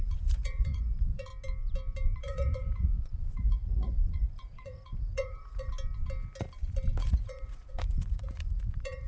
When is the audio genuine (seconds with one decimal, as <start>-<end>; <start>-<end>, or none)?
1.3-2.2; 5.7-7.0